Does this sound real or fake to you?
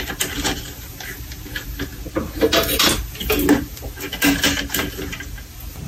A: real